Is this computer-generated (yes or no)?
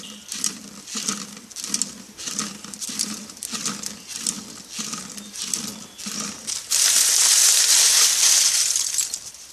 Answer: no